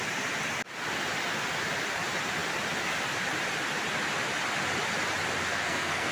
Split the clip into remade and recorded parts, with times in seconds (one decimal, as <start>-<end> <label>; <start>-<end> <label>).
0.0-5.5 recorded; 5.5-6.1 remade